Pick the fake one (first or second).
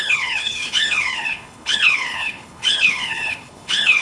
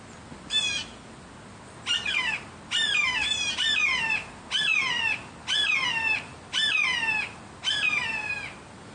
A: first